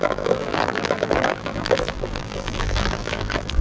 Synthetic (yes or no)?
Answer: yes